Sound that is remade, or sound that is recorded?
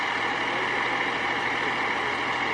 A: recorded